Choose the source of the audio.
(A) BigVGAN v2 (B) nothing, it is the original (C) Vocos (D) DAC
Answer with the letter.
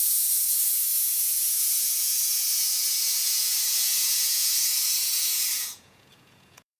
C